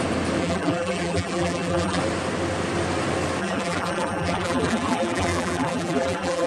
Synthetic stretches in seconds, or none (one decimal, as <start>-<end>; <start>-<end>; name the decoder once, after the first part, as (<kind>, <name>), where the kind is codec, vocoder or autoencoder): 0.4-2.0 (vocoder, BigVGAN v2); 3.4-6.5